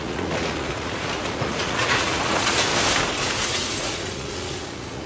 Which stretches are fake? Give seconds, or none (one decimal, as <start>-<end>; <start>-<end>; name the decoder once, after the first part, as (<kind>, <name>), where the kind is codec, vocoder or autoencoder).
0.0-2.7 (vocoder, Vocos); 3.2-5.1